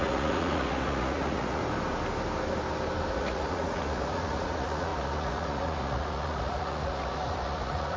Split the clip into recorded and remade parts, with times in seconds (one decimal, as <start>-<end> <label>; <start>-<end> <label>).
0.0-1.6 remade; 1.6-3.1 recorded; 3.1-8.0 remade